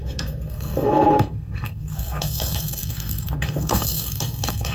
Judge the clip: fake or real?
fake